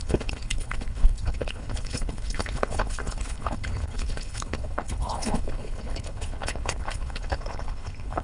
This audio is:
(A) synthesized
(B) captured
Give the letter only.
A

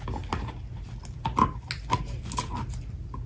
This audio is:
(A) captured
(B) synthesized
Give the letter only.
A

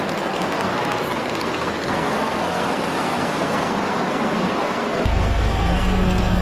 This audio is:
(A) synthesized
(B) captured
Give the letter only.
A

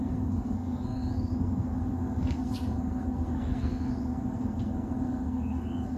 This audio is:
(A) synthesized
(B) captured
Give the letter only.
A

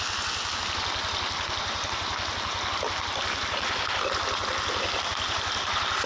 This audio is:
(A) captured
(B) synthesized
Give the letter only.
A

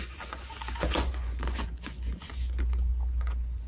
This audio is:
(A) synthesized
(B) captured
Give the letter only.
A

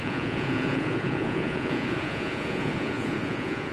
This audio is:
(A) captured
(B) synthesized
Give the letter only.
B